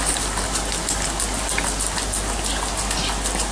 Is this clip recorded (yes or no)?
yes